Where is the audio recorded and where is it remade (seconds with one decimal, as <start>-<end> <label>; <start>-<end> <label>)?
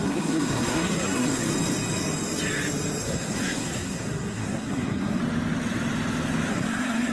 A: 0.0-1.5 remade; 1.5-3.0 recorded; 3.0-5.2 remade; 5.2-6.5 recorded; 6.5-7.1 remade